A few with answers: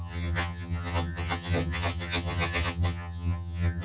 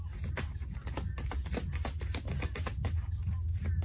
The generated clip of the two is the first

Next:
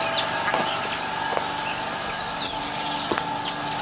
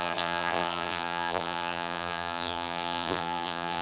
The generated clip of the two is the second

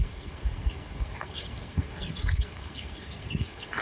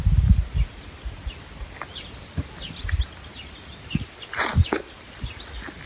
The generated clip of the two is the first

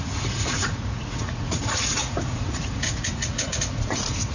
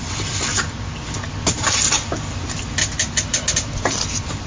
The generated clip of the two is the first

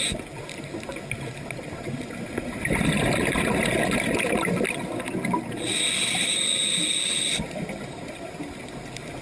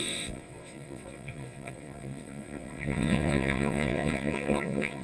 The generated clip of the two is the second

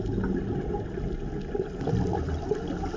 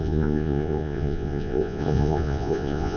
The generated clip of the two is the second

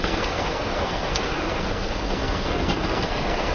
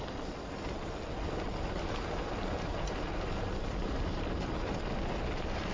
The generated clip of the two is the first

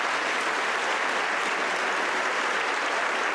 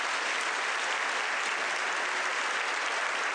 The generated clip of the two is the first